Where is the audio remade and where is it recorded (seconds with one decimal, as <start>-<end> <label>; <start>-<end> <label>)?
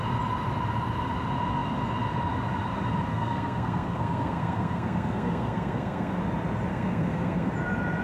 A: 0.0-3.1 recorded; 3.1-6.2 remade; 6.2-6.7 recorded; 6.7-7.5 remade; 7.5-8.0 recorded